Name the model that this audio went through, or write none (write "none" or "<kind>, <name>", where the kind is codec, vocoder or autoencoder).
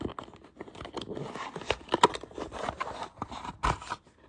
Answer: none